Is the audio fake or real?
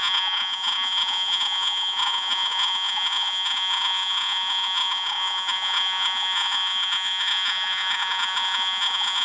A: fake